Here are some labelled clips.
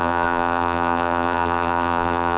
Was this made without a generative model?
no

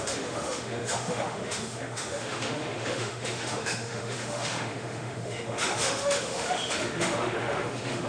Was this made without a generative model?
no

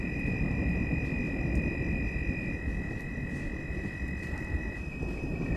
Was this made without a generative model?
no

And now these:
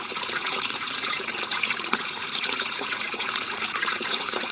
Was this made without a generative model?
no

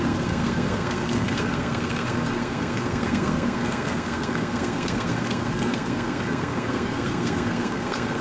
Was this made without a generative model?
no